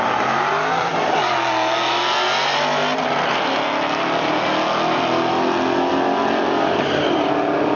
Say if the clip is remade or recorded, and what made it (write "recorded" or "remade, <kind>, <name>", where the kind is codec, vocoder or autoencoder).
recorded